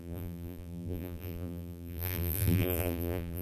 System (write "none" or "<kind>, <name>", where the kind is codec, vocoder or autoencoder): vocoder, BigVGAN v2